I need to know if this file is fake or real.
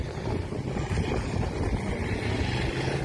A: real